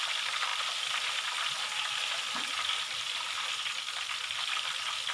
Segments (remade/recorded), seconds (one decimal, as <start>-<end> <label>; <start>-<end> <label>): 0.0-0.5 recorded; 0.5-3.6 remade; 3.6-5.1 recorded